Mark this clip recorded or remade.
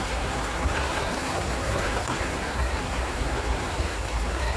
remade